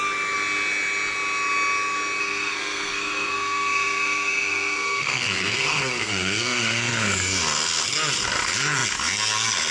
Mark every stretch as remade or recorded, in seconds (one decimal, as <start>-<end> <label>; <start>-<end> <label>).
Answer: 0.0-2.2 recorded; 2.2-6.9 remade; 6.9-9.7 recorded